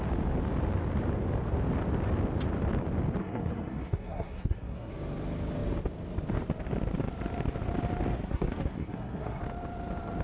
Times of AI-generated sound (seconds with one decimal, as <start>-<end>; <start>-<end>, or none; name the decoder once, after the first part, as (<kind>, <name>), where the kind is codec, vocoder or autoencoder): 3.2-4.9 (codec, SNAC); 8.1-9.4